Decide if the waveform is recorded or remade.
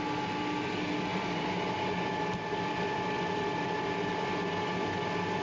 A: recorded